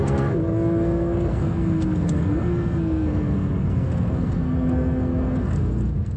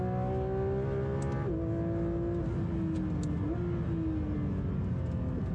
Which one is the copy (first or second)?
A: first